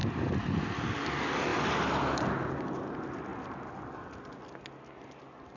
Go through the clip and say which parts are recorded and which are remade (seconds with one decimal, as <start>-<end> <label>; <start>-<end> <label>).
0.0-1.5 remade; 1.5-2.5 recorded; 2.5-3.3 remade; 3.3-5.6 recorded